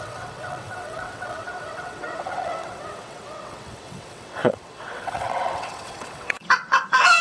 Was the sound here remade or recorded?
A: remade